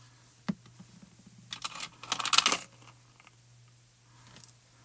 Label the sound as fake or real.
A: real